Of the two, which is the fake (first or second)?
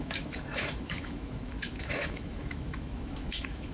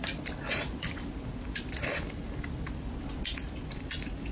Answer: first